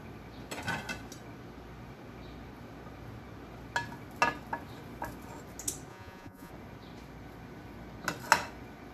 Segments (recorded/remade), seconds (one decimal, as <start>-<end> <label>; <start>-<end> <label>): 0.0-5.9 recorded; 5.9-6.5 remade; 6.5-8.9 recorded